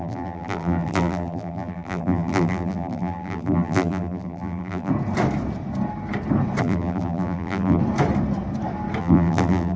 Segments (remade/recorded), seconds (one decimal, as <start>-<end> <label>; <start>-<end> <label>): 0.0-4.9 remade; 4.9-6.6 recorded; 6.6-7.8 remade; 7.8-9.0 recorded; 9.0-9.8 remade